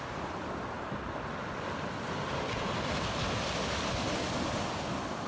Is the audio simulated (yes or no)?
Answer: no